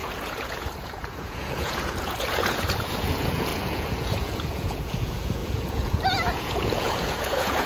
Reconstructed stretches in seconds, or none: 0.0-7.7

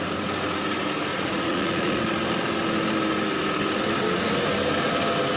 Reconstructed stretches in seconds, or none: 1.1-2.0

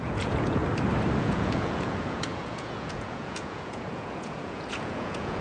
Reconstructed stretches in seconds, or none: 0.0-0.6; 1.2-5.4

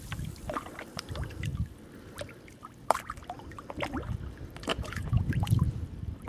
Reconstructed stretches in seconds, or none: 4.7-5.3

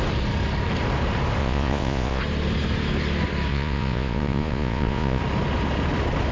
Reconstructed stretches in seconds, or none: 1.4-2.2; 3.5-5.2

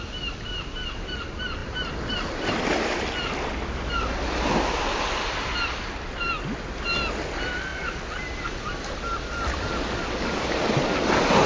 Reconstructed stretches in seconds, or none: none

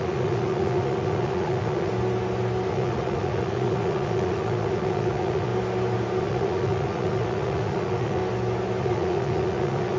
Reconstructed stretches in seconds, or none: 0.0-1.9; 2.7-5.5; 6.2-8.2; 8.8-10.0